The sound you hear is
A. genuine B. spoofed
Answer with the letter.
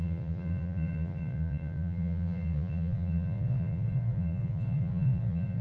B